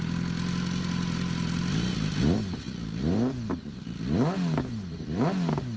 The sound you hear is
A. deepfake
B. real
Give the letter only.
B